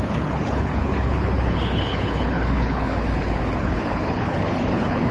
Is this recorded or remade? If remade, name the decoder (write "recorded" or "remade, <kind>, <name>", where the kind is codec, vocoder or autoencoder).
remade, codec, HILCodec